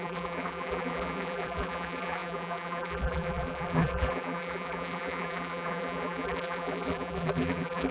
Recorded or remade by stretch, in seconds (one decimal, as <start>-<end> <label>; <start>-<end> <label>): 0.0-7.9 remade